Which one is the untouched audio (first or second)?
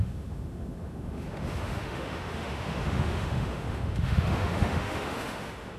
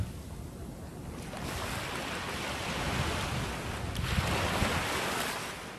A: second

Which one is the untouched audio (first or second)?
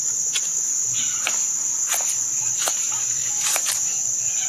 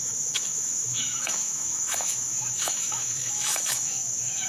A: first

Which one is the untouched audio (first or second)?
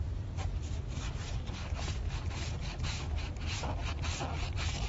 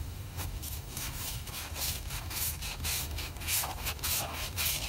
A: first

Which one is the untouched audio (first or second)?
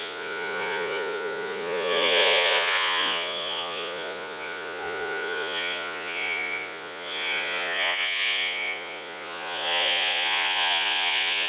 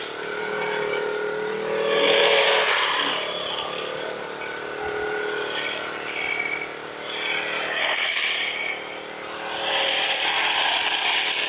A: second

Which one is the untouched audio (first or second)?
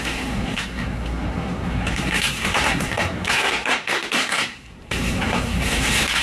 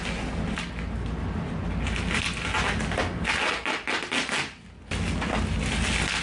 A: second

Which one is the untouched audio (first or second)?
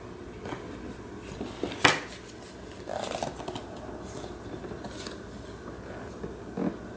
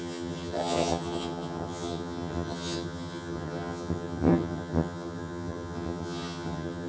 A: first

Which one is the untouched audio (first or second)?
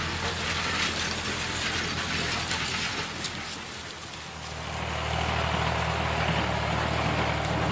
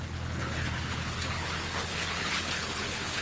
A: first